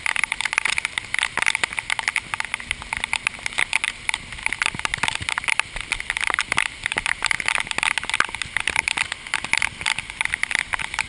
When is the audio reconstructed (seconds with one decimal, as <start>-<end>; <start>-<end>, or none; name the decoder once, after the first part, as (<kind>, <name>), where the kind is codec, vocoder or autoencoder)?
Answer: none